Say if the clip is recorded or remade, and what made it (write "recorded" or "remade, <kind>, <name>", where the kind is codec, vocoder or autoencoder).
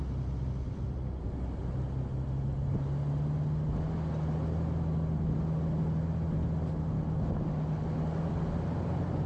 recorded